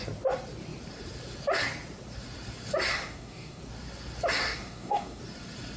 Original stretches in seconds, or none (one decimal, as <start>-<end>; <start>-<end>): 0.0-2.9; 3.6-4.4; 5.2-5.8